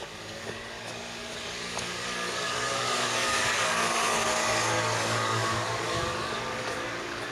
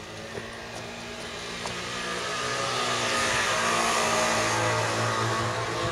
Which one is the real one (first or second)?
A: second